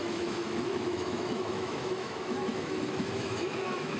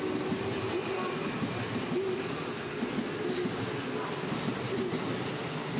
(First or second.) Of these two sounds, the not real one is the first